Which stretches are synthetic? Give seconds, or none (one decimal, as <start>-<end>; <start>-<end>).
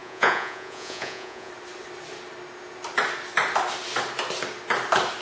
0.0-1.5